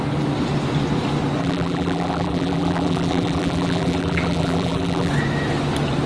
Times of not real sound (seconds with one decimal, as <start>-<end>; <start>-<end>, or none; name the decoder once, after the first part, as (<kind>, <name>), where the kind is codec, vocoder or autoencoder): 1.4-5.1 (vocoder, BigVGAN v2)